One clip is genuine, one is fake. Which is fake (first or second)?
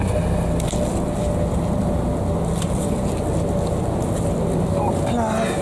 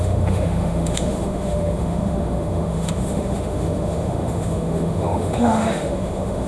second